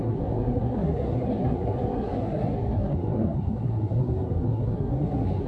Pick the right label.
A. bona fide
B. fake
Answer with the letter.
B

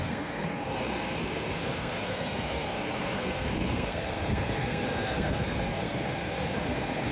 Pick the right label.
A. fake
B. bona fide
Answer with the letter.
A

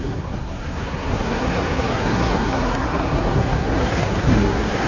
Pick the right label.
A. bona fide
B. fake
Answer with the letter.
B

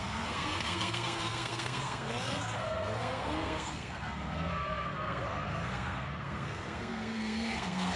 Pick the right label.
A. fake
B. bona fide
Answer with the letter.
A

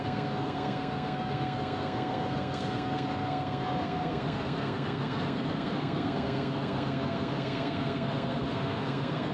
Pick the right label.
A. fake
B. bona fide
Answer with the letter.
A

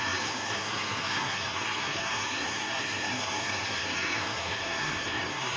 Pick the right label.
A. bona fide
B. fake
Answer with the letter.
B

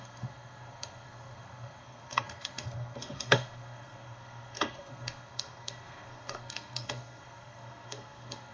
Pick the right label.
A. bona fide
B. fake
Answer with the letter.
B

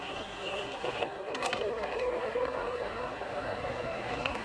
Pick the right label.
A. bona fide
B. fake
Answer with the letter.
B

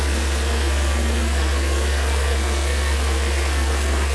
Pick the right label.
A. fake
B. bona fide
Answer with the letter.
A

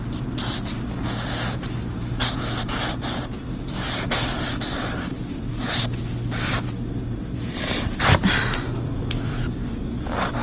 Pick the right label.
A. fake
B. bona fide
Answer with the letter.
B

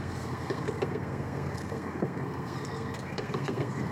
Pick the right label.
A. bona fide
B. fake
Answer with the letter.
B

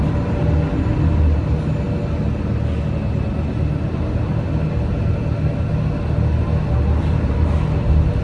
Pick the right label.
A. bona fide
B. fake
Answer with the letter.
A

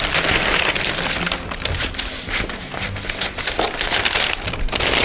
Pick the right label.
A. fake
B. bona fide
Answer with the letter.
B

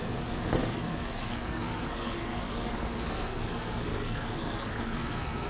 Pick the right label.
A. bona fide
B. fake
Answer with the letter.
B